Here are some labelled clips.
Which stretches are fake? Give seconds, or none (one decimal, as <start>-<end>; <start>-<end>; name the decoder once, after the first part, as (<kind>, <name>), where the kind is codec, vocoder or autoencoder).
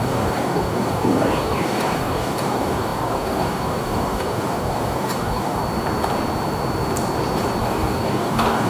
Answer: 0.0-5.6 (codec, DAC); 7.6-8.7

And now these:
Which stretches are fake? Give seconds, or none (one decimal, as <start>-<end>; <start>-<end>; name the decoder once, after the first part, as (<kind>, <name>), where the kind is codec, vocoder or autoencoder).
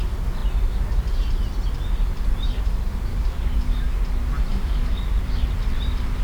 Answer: 3.1-3.9 (codec, DAC); 4.5-5.0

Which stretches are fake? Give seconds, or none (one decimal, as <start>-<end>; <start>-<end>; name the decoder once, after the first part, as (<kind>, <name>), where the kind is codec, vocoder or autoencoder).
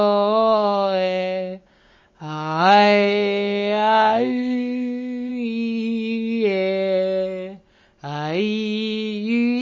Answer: 0.0-5.3 (codec, DAC)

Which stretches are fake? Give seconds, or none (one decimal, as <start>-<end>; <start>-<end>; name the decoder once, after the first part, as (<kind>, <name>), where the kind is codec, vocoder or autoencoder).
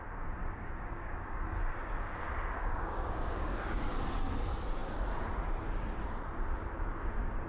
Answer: 0.4-1.4 (codec, DAC); 2.6-3.8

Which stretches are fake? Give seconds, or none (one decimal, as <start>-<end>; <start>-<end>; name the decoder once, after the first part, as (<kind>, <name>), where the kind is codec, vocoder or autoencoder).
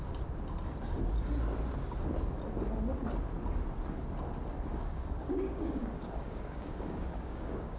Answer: 4.7-7.8 (codec, DAC)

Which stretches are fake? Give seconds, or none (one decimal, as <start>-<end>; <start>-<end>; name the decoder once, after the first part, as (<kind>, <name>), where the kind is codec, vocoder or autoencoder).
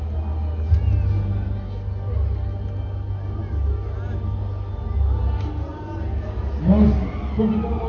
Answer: none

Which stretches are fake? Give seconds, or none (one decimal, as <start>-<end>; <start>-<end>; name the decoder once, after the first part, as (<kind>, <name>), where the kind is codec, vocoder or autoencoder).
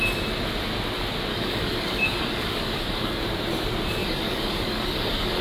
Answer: 1.3-3.2 (codec, DAC); 4.0-5.4